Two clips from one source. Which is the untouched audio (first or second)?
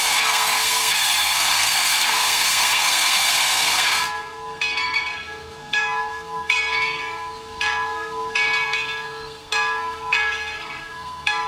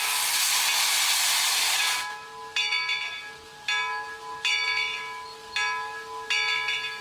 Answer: second